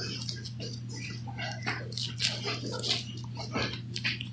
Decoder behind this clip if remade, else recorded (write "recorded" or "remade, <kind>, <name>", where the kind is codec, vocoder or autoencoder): recorded